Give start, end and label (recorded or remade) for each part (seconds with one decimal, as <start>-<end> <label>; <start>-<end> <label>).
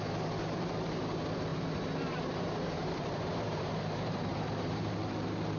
0.0-1.5 recorded; 1.5-4.9 remade; 4.9-5.6 recorded